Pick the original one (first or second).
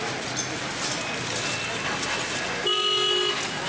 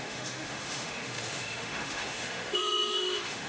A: first